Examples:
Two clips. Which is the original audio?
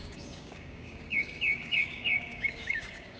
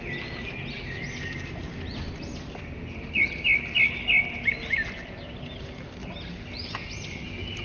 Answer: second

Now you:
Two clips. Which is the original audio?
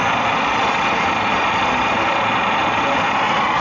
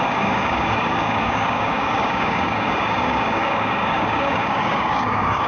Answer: first